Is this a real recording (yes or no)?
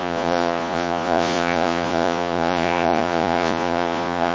no